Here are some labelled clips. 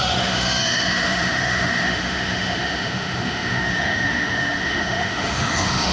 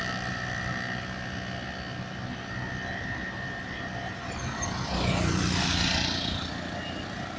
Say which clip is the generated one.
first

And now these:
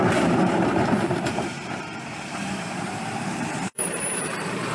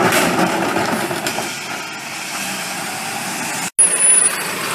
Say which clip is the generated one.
first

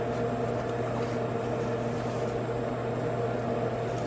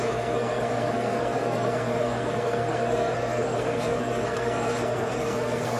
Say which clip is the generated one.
second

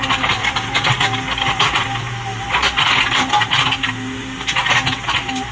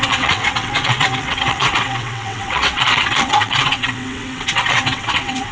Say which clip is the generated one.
second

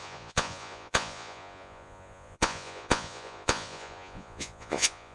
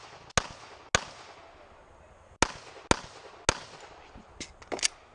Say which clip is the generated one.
first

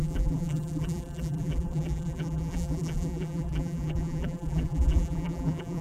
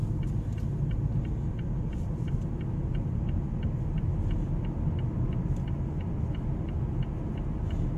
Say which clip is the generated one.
first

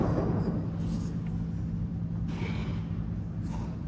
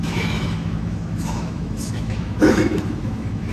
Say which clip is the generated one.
second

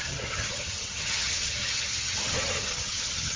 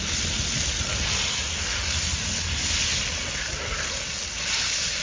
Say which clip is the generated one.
first